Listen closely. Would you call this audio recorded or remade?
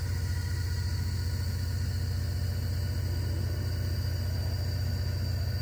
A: recorded